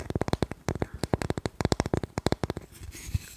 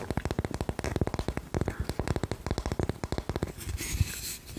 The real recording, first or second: second